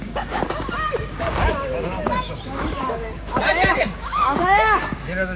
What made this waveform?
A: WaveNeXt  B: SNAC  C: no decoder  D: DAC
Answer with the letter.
D